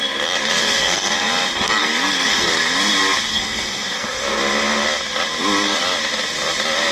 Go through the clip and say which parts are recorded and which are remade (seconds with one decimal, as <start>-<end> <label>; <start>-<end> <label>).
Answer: 0.0-0.6 recorded; 0.6-1.1 remade; 1.1-1.8 recorded; 1.8-2.5 remade; 2.5-3.3 recorded; 3.3-4.4 remade; 4.4-6.9 recorded